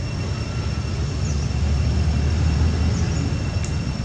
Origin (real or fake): real